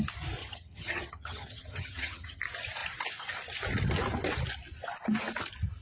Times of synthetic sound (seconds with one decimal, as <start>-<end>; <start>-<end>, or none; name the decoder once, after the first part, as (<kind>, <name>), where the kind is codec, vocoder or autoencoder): 0.4-2.4 (vocoder, HiFi-GAN)